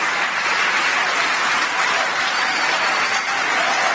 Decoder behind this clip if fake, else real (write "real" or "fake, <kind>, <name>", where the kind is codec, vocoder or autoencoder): fake, vocoder, BigVGAN v2